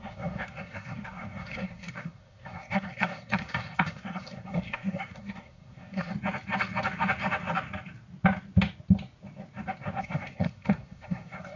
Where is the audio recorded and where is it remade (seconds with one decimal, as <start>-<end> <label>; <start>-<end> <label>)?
0.0-6.1 remade; 6.1-10.0 recorded; 10.0-11.6 remade

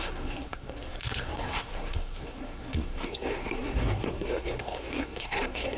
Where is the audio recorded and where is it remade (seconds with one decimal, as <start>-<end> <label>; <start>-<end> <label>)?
0.0-5.8 remade